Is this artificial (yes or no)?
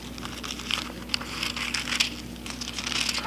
no